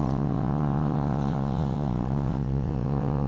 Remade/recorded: remade